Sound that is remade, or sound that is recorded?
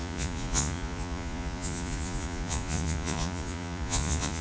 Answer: remade